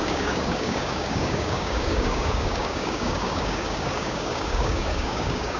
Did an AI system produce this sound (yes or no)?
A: yes